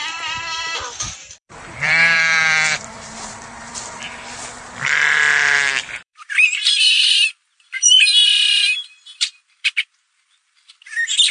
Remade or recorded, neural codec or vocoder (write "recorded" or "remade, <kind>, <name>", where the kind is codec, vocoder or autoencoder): remade, vocoder, BigVGAN v2